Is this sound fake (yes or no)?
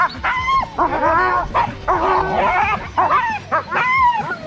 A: no